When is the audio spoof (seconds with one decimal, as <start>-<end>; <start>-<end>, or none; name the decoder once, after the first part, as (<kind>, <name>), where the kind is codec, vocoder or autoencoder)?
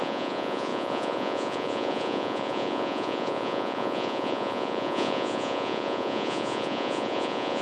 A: 0.0-7.6 (vocoder, Vocos)